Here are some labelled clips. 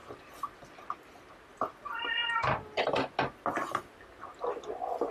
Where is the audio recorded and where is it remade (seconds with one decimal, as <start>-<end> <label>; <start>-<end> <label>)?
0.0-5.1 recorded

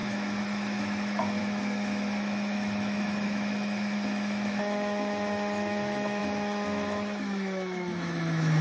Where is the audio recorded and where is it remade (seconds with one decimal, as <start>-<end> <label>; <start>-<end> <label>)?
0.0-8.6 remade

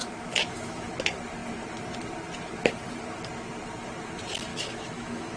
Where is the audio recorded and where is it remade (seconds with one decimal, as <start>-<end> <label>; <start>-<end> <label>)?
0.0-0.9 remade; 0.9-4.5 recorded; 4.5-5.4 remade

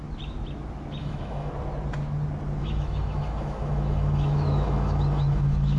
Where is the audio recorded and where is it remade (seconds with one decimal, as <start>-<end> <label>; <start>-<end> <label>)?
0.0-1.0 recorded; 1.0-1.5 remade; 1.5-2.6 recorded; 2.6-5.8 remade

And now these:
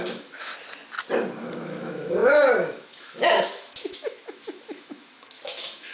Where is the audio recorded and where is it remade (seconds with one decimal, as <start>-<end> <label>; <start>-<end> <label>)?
0.0-0.5 remade; 0.5-1.4 recorded; 1.4-5.9 remade

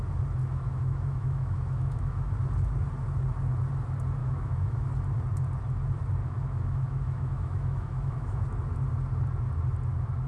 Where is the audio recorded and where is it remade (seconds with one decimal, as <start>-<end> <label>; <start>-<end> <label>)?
0.0-0.4 recorded; 0.4-2.3 remade; 2.3-4.2 recorded; 4.2-4.9 remade; 4.9-6.2 recorded; 6.2-8.4 remade; 8.4-10.3 recorded

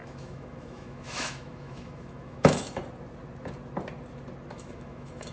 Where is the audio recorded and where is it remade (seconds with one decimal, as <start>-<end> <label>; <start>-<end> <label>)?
0.0-2.8 remade; 2.8-4.5 recorded; 4.5-5.3 remade

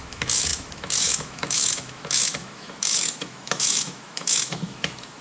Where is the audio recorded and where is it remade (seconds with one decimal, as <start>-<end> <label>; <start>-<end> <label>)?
0.0-5.2 remade